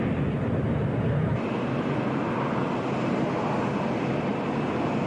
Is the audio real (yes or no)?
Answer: yes